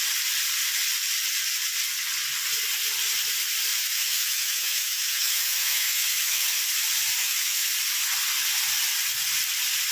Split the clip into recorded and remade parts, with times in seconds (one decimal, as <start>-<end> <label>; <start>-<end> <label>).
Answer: 0.0-3.7 recorded; 3.7-6.6 remade; 6.6-7.2 recorded; 7.2-7.7 remade; 7.7-9.9 recorded

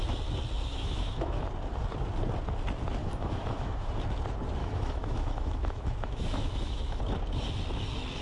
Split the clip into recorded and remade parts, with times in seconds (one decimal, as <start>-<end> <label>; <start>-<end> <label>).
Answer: 0.0-0.7 recorded; 0.7-1.4 remade; 1.4-3.0 recorded; 3.0-3.9 remade; 3.9-4.6 recorded; 4.6-7.0 remade; 7.0-8.2 recorded

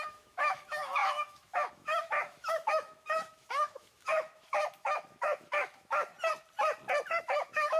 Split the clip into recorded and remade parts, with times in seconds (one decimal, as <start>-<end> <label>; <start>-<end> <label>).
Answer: 0.0-6.1 remade; 6.1-7.2 recorded; 7.2-7.8 remade

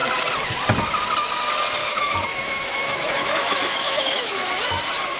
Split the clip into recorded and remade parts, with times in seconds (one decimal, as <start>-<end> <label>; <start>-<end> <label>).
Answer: 0.0-1.8 recorded; 1.8-4.5 remade; 4.5-5.2 recorded

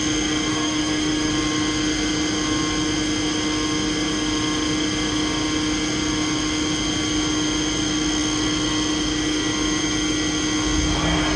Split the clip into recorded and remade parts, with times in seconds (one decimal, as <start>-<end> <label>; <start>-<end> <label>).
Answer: 0.0-0.5 recorded; 0.5-1.3 remade; 1.3-11.4 recorded